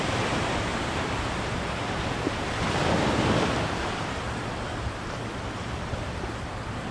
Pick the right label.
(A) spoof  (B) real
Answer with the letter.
A